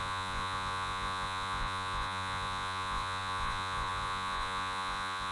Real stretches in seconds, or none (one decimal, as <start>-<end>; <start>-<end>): none